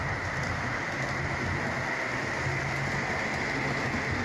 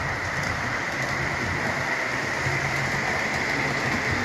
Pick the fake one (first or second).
second